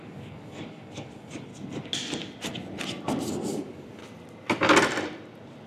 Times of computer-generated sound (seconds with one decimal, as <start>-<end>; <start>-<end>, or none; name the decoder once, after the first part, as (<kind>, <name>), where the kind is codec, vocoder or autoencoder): 0.0-1.5 (codec, DAC); 3.3-4.0